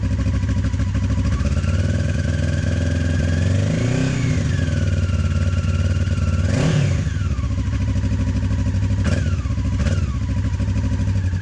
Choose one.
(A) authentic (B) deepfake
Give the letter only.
A